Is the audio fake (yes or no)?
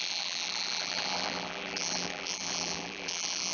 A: yes